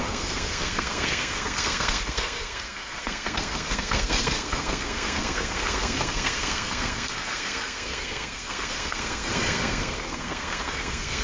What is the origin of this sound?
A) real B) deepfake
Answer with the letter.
B